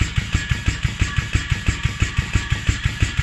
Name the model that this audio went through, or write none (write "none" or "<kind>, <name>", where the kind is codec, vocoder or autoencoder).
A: vocoder, BigVGAN v2